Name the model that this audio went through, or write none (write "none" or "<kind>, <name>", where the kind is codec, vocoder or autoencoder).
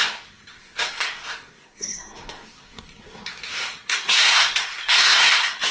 codec, SNAC